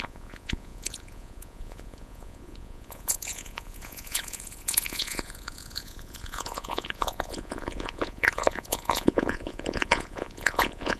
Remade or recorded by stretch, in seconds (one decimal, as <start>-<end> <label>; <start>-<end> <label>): 0.0-11.0 remade